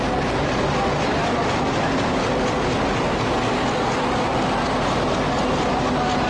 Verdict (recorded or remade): recorded